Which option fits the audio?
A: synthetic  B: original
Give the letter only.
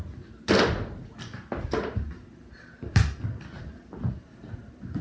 B